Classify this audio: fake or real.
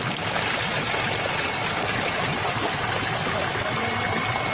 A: fake